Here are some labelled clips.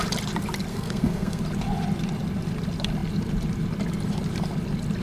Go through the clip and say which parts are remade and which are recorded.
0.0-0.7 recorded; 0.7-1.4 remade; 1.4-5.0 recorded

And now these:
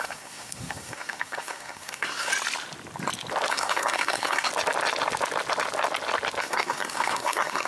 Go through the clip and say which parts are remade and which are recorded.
0.0-2.3 remade; 2.3-3.5 recorded; 3.5-4.5 remade; 4.5-6.4 recorded; 6.4-7.7 remade

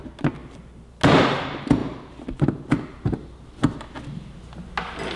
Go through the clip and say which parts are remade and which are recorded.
0.0-5.2 recorded

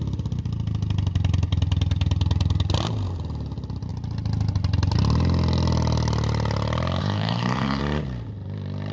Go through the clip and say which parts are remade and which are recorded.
0.0-7.0 recorded; 7.0-7.8 remade; 7.8-8.9 recorded

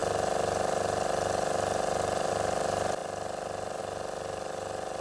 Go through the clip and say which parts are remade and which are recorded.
0.0-5.0 recorded

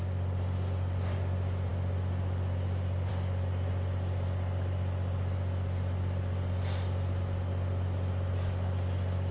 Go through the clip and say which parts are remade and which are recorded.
0.0-9.3 recorded

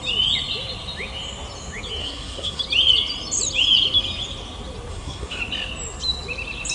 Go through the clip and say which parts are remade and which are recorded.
0.0-2.0 recorded; 2.0-2.6 remade; 2.6-4.9 recorded; 4.9-5.4 remade; 5.4-6.7 recorded